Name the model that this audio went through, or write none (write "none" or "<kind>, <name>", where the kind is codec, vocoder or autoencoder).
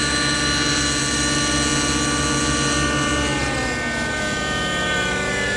none